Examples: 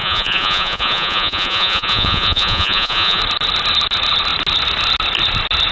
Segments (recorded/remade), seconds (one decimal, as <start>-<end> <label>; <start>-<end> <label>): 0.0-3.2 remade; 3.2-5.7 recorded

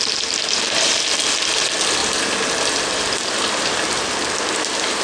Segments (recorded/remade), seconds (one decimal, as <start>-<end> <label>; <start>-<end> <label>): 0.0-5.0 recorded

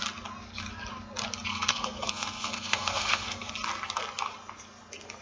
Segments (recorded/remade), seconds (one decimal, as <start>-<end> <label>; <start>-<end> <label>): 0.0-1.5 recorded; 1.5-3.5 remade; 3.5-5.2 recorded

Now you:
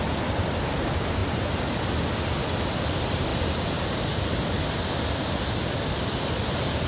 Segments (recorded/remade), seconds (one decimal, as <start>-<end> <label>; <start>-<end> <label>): 0.0-3.3 recorded; 3.3-4.5 remade; 4.5-6.9 recorded